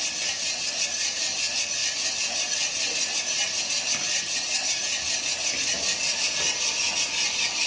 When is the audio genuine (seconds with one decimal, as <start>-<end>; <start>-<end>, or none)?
0.0-4.1; 4.8-7.7